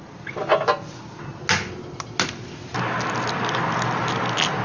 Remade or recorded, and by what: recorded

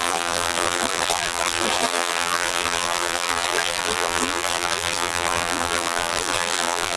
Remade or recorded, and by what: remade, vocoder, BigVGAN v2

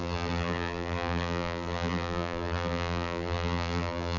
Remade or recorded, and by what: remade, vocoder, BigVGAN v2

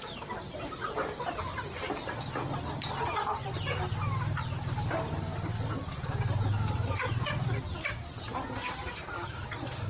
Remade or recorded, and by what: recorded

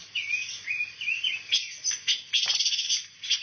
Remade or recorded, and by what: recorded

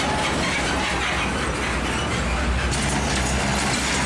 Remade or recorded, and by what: recorded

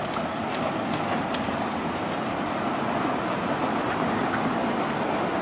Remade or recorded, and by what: recorded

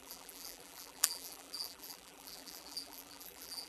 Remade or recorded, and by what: remade, vocoder, BigVGAN v2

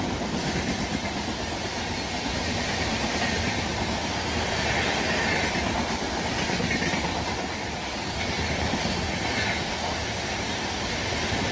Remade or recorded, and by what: recorded